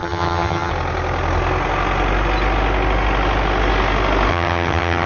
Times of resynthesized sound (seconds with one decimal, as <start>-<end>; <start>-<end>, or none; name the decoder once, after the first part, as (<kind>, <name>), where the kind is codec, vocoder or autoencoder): 0.0-0.7 (vocoder, HiFi-GAN); 4.3-5.1